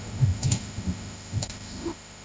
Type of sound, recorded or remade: remade